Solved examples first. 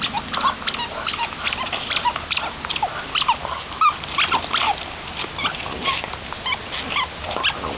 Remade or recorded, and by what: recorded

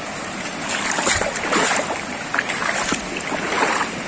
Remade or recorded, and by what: recorded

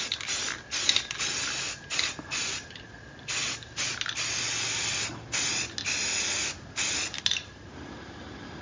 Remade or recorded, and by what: recorded